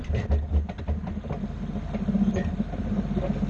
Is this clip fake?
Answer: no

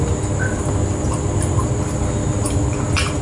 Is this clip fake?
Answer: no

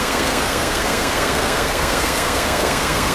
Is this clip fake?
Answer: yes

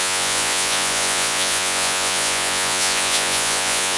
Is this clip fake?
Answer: yes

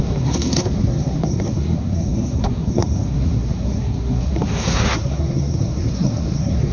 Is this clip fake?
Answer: yes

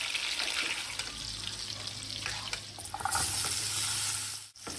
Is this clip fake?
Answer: no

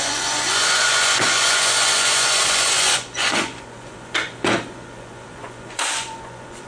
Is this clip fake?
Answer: yes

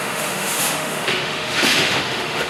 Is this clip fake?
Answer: yes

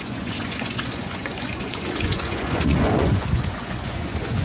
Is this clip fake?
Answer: yes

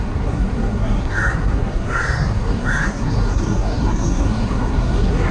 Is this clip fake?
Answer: yes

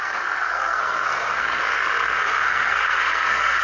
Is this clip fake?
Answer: yes